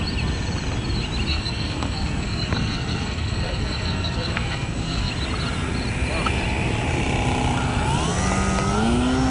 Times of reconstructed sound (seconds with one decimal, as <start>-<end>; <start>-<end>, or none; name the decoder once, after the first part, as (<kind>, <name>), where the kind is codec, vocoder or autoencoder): 1.3-5.1 (codec, SNAC)